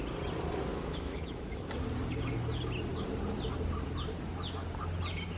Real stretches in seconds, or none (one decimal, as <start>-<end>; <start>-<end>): 0.0-0.7; 1.7-5.4